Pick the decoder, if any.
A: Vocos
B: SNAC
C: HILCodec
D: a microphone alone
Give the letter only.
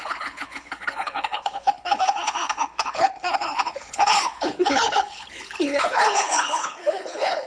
C